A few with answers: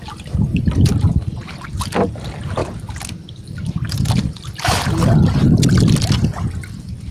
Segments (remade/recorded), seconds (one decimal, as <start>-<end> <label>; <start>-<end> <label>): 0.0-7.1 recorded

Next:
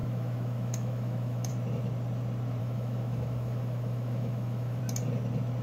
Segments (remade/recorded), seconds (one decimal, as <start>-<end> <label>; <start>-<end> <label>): 0.0-1.5 remade; 1.5-2.6 recorded; 2.6-4.8 remade; 4.8-5.6 recorded

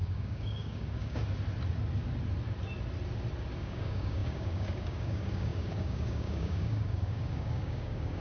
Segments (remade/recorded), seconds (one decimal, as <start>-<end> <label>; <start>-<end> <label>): 0.0-1.2 remade; 1.2-3.6 recorded; 3.6-8.2 remade

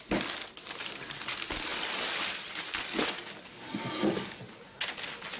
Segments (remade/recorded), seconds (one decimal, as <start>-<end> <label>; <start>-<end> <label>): 0.0-5.4 recorded

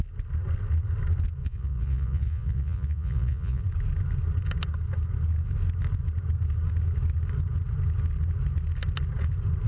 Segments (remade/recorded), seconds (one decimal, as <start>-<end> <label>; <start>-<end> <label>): 0.0-1.4 recorded; 1.4-3.6 remade; 3.6-9.7 recorded

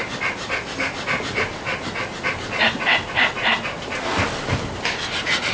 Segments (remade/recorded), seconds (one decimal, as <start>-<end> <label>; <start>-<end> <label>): 0.0-5.5 recorded

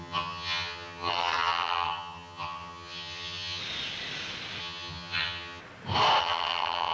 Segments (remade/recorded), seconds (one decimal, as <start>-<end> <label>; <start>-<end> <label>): 0.0-3.6 remade; 3.6-4.6 recorded; 4.6-5.6 remade; 5.6-6.2 recorded; 6.2-6.9 remade